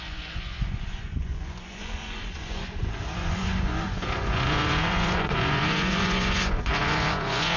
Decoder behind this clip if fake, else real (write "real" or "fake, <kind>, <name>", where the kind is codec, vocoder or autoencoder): fake, vocoder, Vocos